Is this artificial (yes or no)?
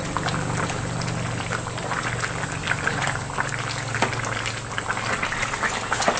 no